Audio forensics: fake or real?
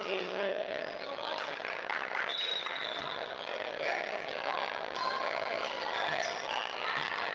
fake